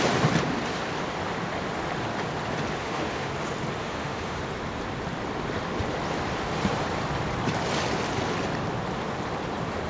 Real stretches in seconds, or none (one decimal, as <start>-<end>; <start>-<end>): 0.0-2.8; 3.3-3.8; 4.4-9.9